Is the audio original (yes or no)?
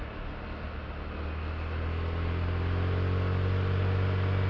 yes